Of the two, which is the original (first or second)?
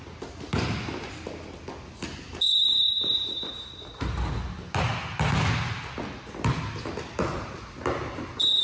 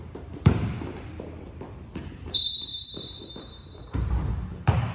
first